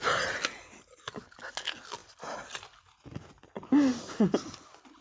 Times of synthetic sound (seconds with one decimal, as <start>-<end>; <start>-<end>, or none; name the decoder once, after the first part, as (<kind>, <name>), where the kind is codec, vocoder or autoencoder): 2.0-2.7 (vocoder, BigVGAN v2); 3.9-5.0